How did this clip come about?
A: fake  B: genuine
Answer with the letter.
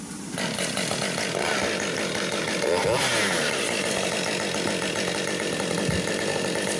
B